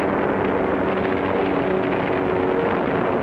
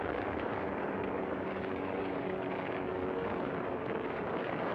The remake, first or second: second